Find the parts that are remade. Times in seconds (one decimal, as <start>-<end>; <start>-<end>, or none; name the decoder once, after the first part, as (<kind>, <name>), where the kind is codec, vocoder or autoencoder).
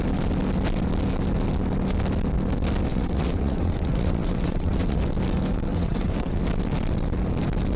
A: 2.9-5.0 (vocoder, WaveNeXt); 5.7-6.4